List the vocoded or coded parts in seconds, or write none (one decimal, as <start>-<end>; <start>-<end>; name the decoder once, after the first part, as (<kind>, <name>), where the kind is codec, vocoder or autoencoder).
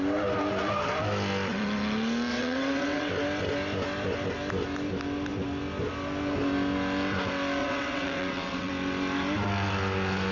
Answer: 2.3-3.1 (vocoder, WaveNeXt); 7.6-8.7